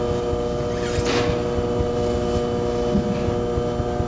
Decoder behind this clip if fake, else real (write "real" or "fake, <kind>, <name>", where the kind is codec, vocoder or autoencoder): real